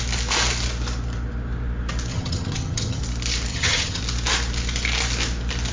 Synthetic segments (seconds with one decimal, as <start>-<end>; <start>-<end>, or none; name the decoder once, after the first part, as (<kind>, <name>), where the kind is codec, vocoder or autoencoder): 2.1-3.0 (vocoder, HiFi-GAN); 3.5-4.0